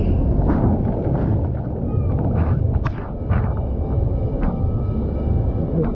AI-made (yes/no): no